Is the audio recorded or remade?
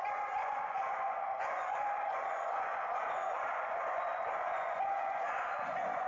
remade